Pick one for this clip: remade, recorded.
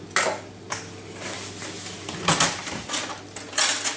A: recorded